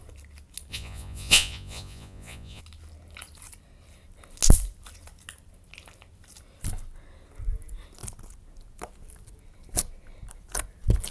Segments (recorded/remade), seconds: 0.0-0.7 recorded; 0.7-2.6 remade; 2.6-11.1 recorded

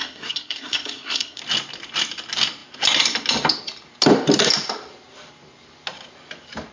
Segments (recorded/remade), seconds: 0.0-1.4 remade; 1.4-6.7 recorded

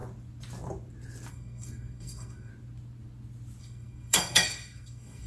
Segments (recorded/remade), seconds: 0.0-1.3 recorded; 1.3-2.5 remade; 2.5-3.6 recorded; 3.6-5.3 remade